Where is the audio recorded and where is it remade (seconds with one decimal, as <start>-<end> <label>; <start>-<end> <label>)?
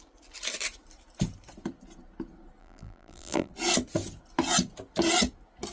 0.0-2.6 recorded; 2.6-3.5 remade; 3.5-5.7 recorded